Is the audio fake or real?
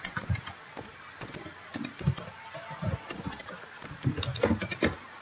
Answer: real